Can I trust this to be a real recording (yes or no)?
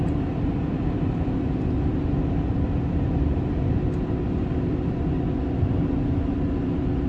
yes